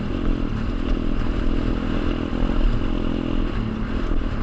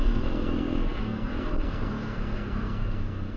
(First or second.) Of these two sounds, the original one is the first